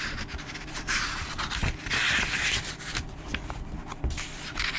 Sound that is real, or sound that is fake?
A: real